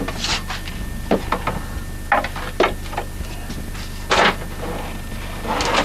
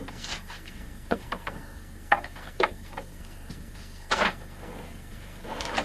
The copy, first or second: second